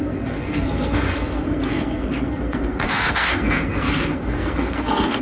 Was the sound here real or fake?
fake